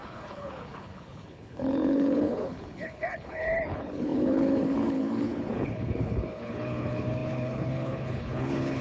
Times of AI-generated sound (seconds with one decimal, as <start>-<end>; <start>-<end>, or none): 0.0-8.8